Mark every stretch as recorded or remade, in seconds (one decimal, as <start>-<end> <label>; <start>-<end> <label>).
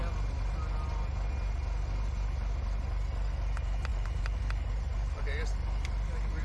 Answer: 0.0-3.9 recorded; 3.9-5.2 remade; 5.2-6.4 recorded